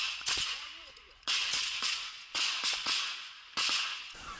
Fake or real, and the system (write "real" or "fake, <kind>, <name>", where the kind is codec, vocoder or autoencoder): fake, vocoder, Vocos